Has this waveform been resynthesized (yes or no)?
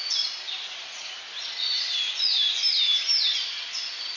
no